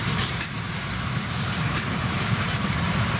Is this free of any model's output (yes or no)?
no